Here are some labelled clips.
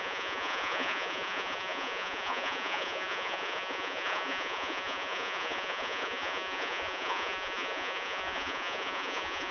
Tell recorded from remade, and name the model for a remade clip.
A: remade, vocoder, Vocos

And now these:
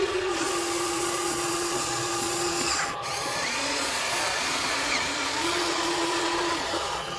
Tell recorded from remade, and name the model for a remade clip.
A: remade, vocoder, Vocos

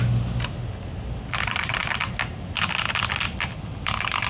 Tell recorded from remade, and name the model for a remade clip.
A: recorded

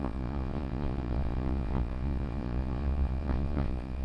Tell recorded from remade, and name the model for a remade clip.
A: remade, vocoder, Vocos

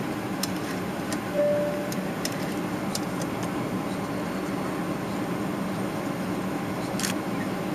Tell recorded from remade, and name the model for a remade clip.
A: recorded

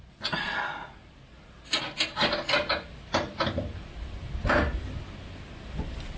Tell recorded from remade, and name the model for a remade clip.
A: recorded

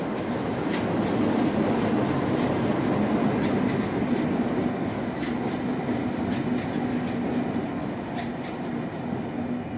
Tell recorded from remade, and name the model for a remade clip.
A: recorded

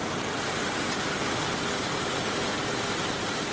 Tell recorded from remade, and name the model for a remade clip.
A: recorded